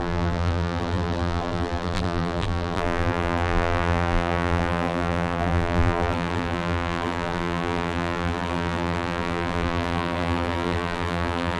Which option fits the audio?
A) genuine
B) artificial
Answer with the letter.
B